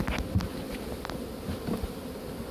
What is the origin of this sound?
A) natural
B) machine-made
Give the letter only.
A